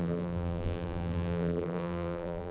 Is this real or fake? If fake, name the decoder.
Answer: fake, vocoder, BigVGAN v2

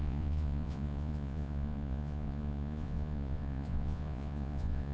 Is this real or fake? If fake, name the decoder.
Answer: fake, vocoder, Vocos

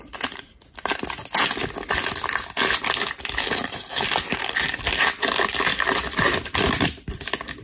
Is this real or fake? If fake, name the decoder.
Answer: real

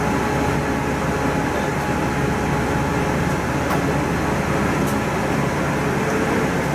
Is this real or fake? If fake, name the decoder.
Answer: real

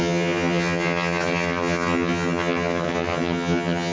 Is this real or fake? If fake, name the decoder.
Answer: fake, vocoder, HiFi-GAN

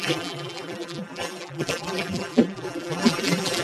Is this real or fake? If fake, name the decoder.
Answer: fake, vocoder, BigVGAN v2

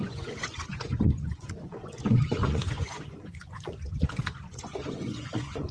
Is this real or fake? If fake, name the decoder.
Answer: fake, vocoder, Vocos